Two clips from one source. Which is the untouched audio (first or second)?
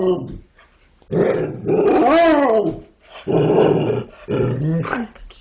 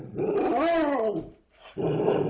first